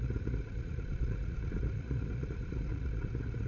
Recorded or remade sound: remade